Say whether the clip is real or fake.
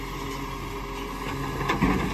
real